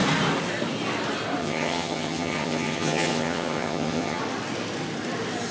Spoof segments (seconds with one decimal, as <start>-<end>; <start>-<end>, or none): 1.4-4.2